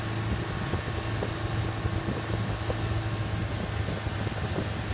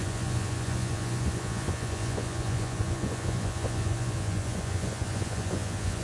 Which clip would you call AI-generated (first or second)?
second